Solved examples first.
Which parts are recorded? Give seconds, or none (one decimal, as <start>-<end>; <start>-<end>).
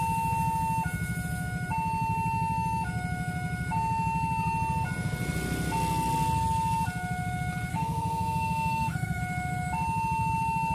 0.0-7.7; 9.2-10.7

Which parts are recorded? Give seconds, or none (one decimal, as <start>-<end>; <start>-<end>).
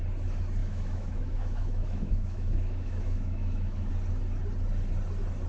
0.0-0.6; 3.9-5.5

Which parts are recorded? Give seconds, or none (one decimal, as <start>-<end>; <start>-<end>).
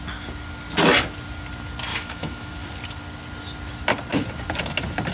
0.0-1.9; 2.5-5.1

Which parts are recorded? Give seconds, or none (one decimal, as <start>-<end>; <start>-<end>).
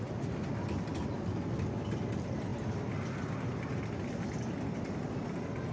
0.0-5.7